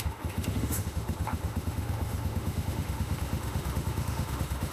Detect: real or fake fake